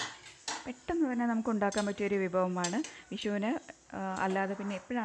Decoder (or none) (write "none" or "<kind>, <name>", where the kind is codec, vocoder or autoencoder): none